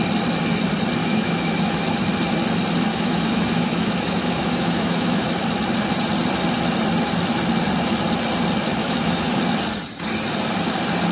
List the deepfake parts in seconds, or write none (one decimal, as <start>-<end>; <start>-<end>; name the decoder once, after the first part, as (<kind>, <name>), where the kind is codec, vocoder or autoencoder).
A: 1.0-1.8 (autoencoder, DAC-VAE); 2.9-5.3; 8.8-9.4